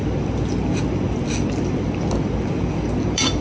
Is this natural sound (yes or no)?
yes